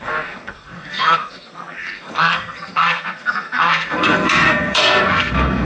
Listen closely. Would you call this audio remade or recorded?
remade